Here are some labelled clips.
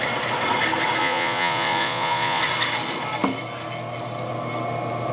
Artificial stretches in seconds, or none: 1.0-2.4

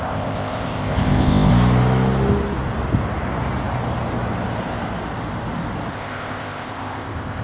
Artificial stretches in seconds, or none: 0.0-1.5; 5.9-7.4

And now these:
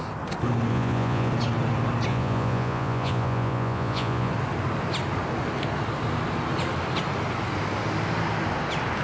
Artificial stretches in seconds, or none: 0.7-1.3; 2.1-4.3

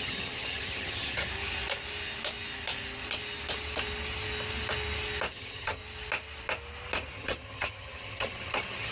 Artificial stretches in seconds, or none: 0.0-1.3; 5.3-5.8; 7.1-8.9

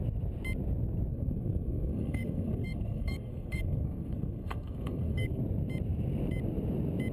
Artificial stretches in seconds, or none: 1.1-5.4

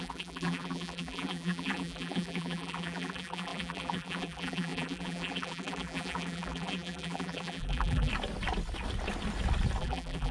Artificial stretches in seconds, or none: 0.0-8.1; 9.8-10.3

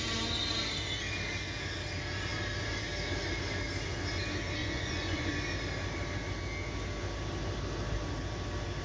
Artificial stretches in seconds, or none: 4.6-5.3

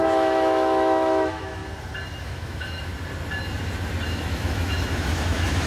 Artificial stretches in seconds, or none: 0.0-1.6; 2.2-2.9; 4.1-5.7